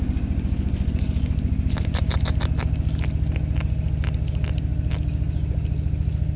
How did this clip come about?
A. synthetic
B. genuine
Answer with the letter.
B